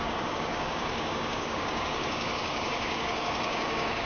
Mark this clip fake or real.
fake